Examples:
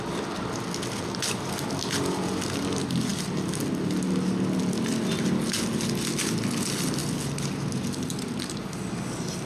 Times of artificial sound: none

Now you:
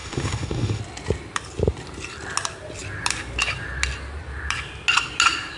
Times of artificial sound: 0.0-0.8